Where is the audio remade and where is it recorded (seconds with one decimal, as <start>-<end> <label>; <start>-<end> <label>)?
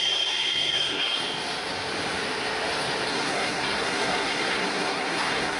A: 0.0-1.2 remade; 1.2-3.1 recorded; 3.1-5.6 remade